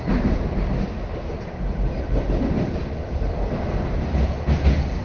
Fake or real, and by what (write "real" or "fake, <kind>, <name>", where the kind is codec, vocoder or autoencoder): real